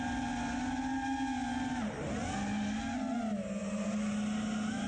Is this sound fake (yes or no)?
no